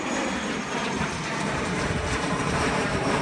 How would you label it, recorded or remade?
remade